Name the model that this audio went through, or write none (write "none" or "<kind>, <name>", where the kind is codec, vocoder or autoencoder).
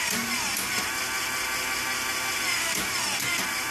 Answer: none